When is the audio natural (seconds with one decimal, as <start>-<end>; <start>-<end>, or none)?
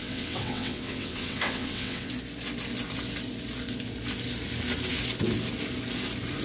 2.1-6.4